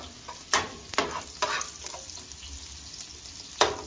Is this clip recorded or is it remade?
recorded